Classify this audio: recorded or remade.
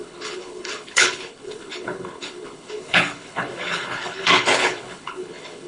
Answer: remade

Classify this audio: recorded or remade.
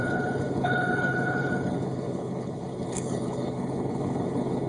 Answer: remade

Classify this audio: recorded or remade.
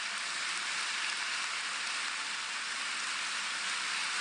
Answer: recorded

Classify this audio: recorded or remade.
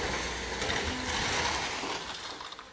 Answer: recorded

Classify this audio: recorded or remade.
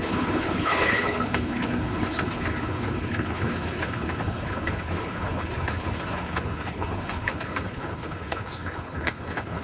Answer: remade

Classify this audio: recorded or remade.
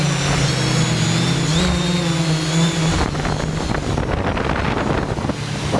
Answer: recorded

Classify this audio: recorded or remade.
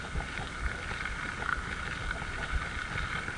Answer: recorded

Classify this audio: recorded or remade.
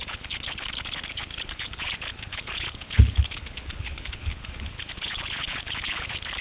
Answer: remade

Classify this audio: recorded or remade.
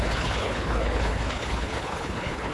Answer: remade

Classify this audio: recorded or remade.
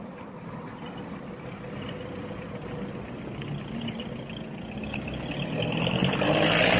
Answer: recorded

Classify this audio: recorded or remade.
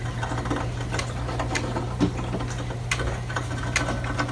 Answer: recorded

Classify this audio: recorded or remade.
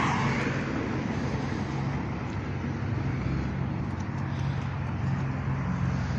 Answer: recorded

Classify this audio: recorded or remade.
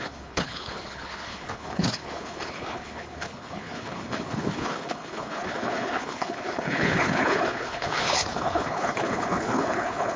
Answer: remade